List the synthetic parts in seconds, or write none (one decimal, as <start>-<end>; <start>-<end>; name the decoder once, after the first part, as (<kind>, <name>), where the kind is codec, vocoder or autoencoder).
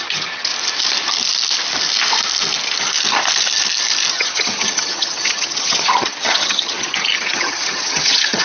0.0-0.5 (vocoder, HiFi-GAN); 4.1-8.4